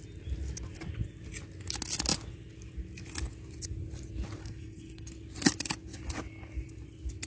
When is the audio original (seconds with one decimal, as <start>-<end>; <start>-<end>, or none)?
0.0-4.4; 5.1-7.3